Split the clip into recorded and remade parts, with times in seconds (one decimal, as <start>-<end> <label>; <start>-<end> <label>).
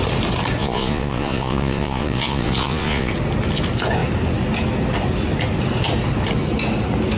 0.0-0.6 recorded; 0.6-3.1 remade; 3.1-7.2 recorded